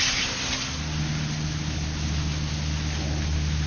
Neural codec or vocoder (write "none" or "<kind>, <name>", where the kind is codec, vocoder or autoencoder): none